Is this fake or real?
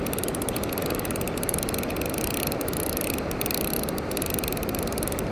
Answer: real